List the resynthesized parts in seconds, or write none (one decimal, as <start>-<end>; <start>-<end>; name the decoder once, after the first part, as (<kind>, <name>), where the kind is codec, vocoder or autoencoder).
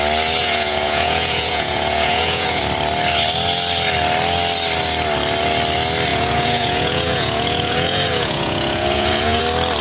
0.4-2.6 (vocoder, Vocos); 6.1-9.4